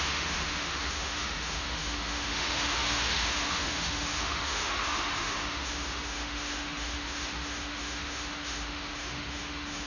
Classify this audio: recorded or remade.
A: remade